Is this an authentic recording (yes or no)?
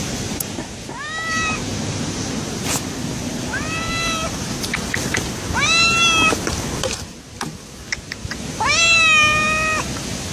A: yes